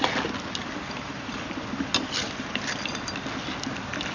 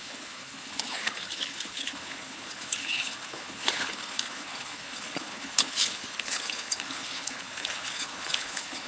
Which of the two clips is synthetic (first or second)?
second